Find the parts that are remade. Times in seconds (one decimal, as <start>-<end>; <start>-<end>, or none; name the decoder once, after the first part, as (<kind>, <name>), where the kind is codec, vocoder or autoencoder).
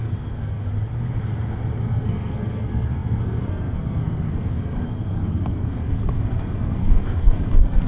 0.0-0.7 (codec, SNAC); 1.8-7.9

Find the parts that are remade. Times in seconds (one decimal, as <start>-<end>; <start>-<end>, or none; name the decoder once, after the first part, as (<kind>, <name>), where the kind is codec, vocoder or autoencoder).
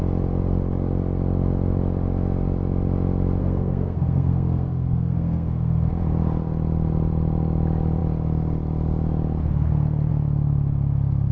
3.4-5.9 (codec, SNAC)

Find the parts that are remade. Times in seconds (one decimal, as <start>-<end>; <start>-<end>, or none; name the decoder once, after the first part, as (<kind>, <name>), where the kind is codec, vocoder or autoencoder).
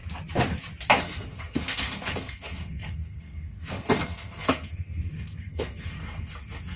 1.0-6.8 (codec, SNAC)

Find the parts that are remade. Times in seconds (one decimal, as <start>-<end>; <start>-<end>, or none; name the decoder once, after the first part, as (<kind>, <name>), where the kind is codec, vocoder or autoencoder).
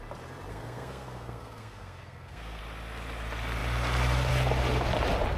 0.5-2.6 (codec, SNAC)